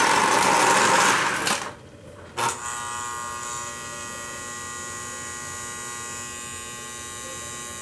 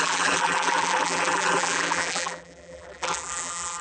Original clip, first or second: first